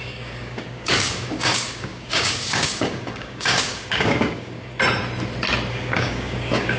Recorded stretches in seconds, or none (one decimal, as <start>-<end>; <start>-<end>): 4.7-5.7